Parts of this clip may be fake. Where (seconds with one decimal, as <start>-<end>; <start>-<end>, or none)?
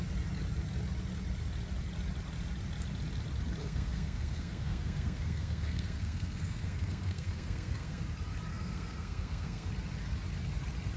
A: 3.6-8.0; 8.5-9.7